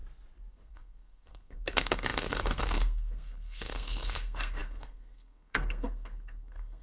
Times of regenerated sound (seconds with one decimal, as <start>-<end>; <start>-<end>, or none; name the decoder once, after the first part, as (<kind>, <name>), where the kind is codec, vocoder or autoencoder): 0.5-6.8 (codec, SNAC)